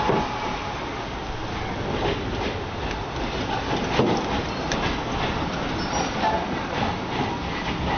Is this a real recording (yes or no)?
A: yes